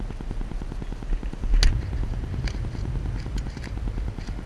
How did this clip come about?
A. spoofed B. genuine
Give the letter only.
B